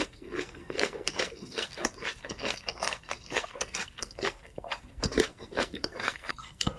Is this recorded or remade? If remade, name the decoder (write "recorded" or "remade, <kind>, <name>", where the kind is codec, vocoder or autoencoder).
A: remade, codec, SNAC